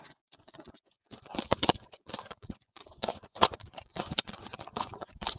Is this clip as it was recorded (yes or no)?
no